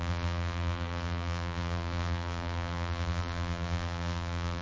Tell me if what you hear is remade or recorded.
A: remade